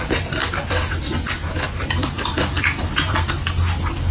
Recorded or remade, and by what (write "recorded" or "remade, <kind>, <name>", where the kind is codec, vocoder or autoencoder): recorded